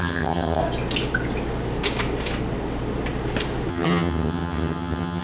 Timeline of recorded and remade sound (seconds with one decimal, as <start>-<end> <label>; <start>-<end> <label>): 0.0-0.6 remade; 0.6-3.7 recorded; 3.7-5.2 remade